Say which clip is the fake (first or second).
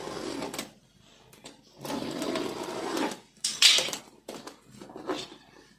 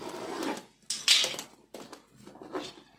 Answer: first